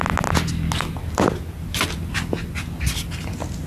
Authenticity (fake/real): real